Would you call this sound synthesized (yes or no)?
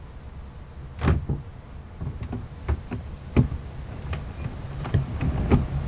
no